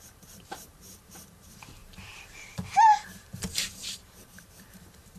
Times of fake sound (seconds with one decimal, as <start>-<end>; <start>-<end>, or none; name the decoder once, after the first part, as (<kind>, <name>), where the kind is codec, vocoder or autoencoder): 0.0-5.2 (vocoder, BigVGAN v2)